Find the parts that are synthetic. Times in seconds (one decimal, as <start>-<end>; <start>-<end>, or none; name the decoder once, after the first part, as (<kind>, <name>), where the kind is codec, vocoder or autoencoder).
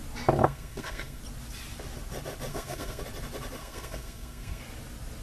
0.4-1.2 (codec, SNAC); 2.5-3.0; 3.6-4.6